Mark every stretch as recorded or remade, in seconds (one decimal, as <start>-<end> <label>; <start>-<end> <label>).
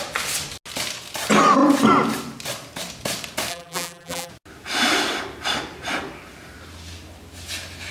0.0-3.5 recorded; 3.5-4.3 remade; 4.3-7.9 recorded